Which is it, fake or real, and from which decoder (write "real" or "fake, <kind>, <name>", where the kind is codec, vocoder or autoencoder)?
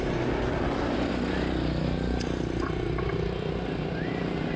real